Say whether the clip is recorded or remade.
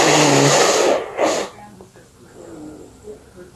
recorded